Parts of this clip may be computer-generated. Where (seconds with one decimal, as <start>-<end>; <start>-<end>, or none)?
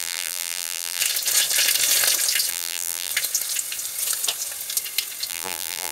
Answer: 0.0-1.0; 2.5-3.1; 5.3-5.9